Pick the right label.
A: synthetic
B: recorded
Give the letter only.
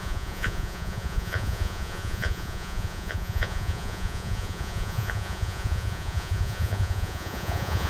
A